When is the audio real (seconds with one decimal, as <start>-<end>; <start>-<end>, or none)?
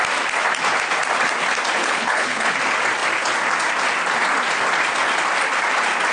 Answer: 0.0-1.8; 2.5-6.1